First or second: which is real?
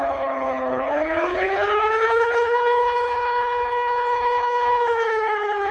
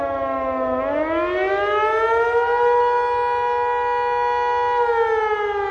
second